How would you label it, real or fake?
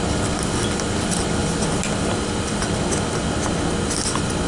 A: real